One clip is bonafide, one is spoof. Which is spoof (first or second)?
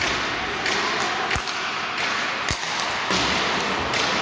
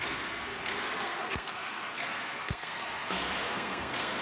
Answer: second